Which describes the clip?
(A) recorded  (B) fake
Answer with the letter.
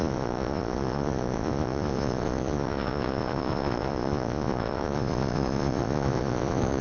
B